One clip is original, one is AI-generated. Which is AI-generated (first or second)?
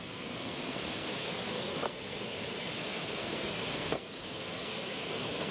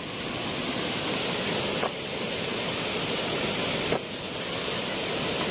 first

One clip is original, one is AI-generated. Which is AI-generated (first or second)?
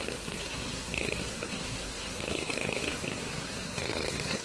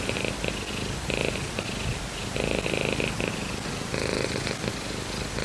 first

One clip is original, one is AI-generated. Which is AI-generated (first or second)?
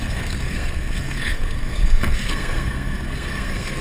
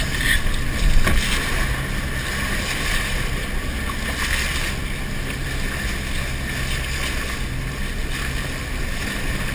first